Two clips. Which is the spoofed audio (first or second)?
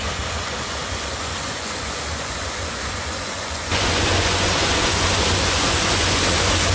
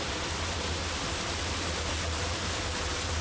first